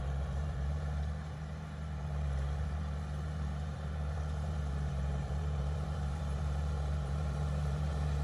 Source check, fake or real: fake